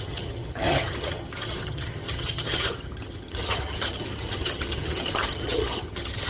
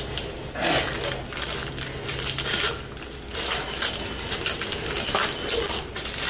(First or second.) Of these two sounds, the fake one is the first